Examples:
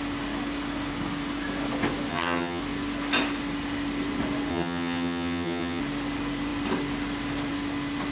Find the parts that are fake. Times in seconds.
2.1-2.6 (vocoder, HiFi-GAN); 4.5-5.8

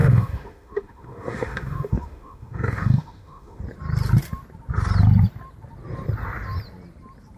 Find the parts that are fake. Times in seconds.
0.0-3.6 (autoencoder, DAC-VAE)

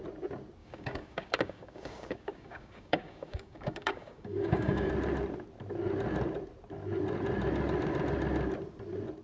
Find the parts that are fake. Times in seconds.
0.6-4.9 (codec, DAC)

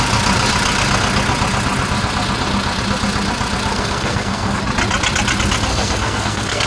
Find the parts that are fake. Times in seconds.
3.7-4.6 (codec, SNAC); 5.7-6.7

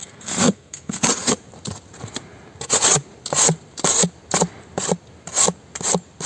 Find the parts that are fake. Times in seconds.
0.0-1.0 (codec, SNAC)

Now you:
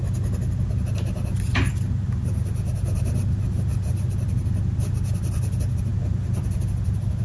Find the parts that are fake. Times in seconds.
none

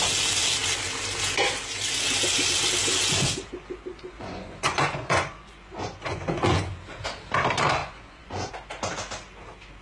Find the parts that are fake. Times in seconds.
3.9-6.7 (vocoder, Vocos); 7.8-8.5